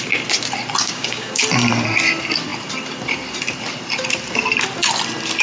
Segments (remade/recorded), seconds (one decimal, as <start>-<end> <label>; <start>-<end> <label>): 0.0-0.8 recorded; 0.8-1.4 remade; 1.4-5.4 recorded